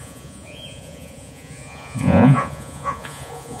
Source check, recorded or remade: remade